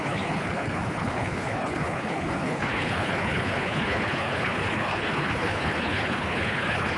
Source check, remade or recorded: remade